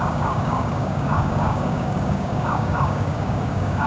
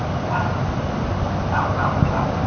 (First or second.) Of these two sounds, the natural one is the second